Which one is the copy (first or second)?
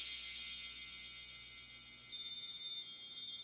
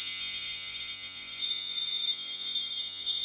second